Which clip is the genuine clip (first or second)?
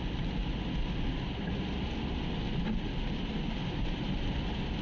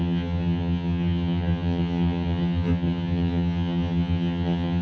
first